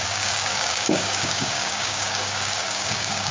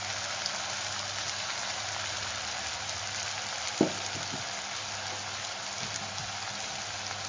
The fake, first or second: first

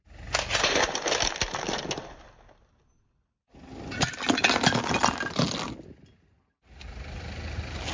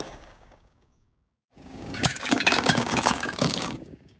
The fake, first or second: second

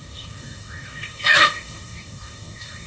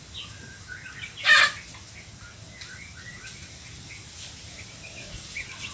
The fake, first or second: first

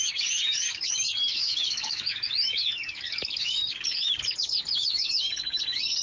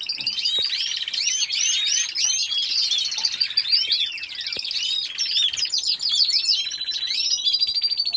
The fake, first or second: first